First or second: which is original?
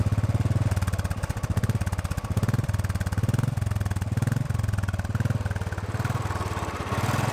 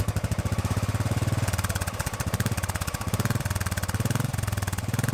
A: first